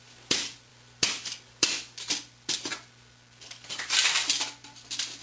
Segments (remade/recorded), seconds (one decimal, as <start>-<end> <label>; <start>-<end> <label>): 0.0-5.2 recorded

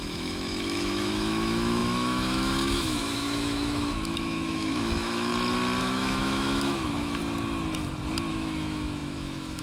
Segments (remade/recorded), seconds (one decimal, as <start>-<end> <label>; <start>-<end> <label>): 0.0-5.3 remade; 5.3-5.8 recorded; 5.8-7.2 remade; 7.2-8.3 recorded; 8.3-9.6 remade

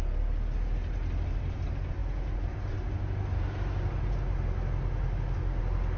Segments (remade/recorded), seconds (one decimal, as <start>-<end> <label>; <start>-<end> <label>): 0.0-6.0 recorded

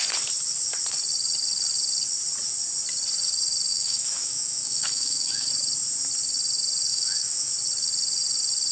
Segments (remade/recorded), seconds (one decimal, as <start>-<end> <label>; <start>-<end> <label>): 0.0-3.7 recorded; 3.7-5.5 remade; 5.5-6.9 recorded; 6.9-7.5 remade; 7.5-8.7 recorded

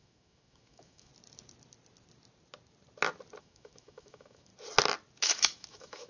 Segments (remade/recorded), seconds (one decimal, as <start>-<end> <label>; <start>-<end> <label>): 0.0-1.1 remade; 1.1-3.4 recorded; 3.4-4.5 remade; 4.5-5.2 recorded; 5.2-6.1 remade

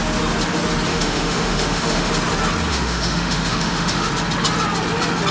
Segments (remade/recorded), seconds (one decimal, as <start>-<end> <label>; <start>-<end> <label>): 0.0-0.9 recorded; 0.9-2.1 remade; 2.1-2.7 recorded; 2.7-4.1 remade; 4.1-5.3 recorded